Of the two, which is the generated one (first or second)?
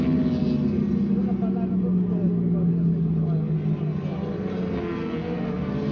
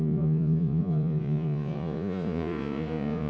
second